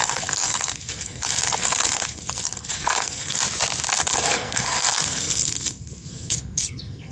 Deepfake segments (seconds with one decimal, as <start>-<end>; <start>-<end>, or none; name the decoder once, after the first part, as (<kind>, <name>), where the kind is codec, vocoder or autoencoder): 0.0-3.4 (codec, SNAC); 4.0-7.1